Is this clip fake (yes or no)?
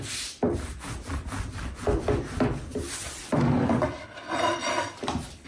yes